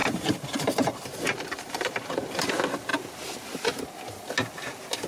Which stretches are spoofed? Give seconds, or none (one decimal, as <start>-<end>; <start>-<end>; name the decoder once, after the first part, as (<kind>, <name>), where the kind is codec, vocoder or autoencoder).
0.0-2.5 (vocoder, BigVGAN v2)